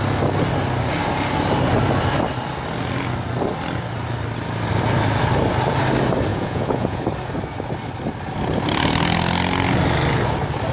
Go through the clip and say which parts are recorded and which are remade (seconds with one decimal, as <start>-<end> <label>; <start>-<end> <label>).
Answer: 0.0-6.3 recorded; 6.3-7.0 remade; 7.0-10.7 recorded